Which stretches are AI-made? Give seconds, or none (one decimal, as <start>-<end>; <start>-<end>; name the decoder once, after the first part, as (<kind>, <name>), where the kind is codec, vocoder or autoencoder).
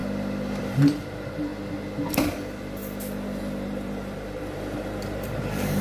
0.6-1.5 (vocoder, BigVGAN v2); 2.1-2.8; 3.4-5.8